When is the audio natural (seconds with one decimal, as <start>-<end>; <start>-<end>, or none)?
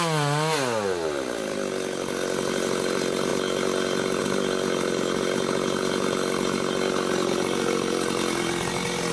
0.0-9.1